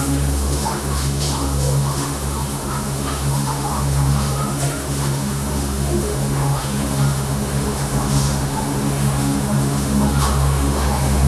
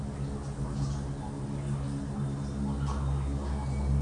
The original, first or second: second